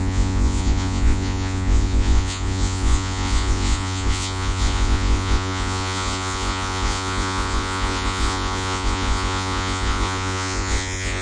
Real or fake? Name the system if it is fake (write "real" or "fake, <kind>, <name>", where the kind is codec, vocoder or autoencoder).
fake, vocoder, Vocos